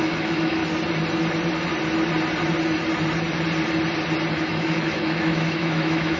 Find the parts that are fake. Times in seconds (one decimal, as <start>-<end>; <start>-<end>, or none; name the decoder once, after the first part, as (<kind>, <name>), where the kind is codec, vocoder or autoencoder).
0.0-0.6 (autoencoder, DAC-VAE); 4.3-6.2